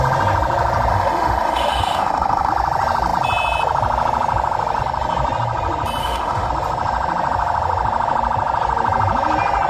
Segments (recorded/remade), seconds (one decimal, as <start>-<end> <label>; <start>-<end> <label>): 0.0-0.9 recorded; 0.9-2.5 remade; 2.5-6.0 recorded; 6.0-6.5 remade; 6.5-9.7 recorded